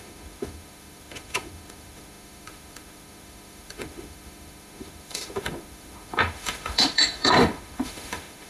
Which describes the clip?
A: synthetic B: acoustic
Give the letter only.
A